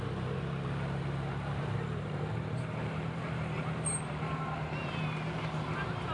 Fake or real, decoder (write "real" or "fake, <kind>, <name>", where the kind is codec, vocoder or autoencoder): fake, vocoder, BigVGAN v2